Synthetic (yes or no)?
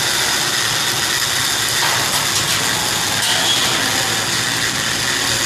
no